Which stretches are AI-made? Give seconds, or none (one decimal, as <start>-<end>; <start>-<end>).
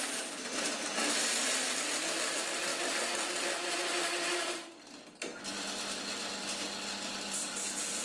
none